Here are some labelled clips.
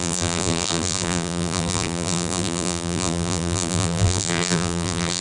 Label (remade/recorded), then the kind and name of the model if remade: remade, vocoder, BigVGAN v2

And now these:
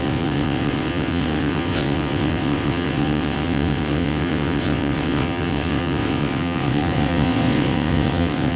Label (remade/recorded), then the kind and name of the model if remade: remade, vocoder, WaveNeXt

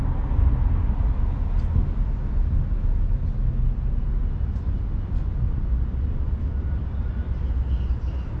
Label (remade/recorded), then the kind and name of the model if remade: recorded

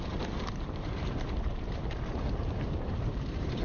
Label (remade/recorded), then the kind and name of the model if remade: remade, vocoder, BigVGAN v2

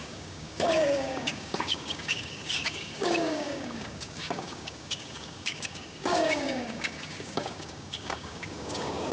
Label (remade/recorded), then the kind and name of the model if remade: remade, codec, DAC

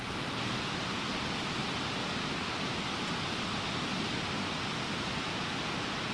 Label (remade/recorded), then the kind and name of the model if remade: recorded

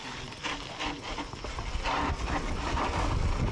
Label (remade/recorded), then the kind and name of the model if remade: recorded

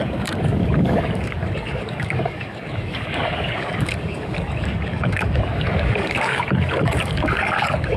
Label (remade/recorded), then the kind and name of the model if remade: remade, codec, DAC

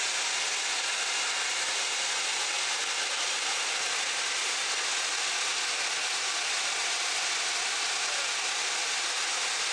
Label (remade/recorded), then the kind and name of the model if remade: recorded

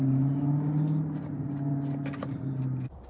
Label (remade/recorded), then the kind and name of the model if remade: recorded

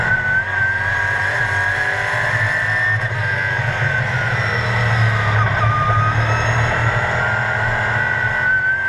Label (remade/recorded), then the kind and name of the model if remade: recorded